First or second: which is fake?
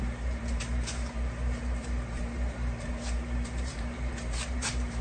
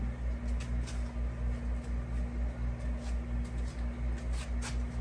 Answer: first